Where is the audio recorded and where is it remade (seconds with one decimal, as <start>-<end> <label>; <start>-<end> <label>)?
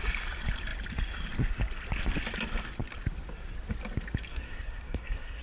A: 0.0-4.3 recorded; 4.3-5.4 remade